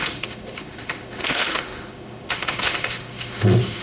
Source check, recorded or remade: remade